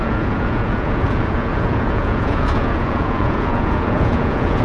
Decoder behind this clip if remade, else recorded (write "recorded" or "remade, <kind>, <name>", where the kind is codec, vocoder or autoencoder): remade, vocoder, Vocos